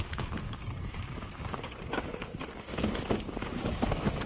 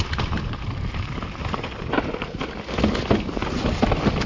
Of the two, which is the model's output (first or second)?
first